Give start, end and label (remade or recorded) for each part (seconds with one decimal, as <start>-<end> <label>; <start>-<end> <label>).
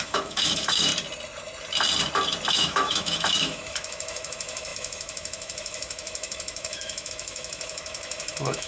0.0-0.9 remade; 0.9-2.5 recorded; 2.5-8.7 remade